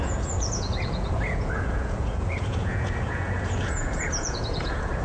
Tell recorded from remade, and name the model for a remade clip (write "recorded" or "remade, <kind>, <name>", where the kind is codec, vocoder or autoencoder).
remade, vocoder, Vocos